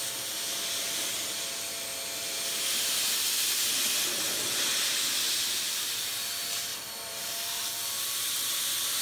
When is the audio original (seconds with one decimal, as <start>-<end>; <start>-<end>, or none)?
0.0-6.7